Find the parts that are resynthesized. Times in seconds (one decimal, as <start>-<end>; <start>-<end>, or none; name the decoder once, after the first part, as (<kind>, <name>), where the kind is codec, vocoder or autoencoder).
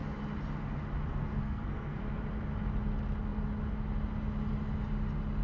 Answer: 1.1-2.0 (codec, SNAC)